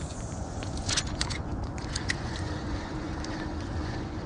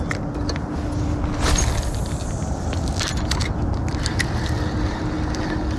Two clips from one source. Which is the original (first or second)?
second